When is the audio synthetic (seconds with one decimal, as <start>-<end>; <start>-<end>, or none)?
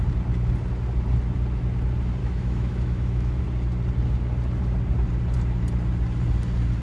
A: 2.2-3.4